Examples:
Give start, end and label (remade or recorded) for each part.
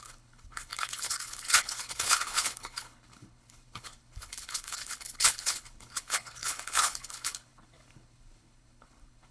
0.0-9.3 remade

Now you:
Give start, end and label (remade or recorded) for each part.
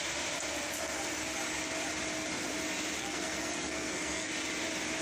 0.0-3.0 recorded; 3.0-4.3 remade; 4.3-5.0 recorded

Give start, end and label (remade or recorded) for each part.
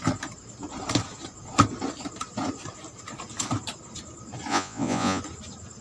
0.0-4.5 recorded; 4.5-5.2 remade; 5.2-5.8 recorded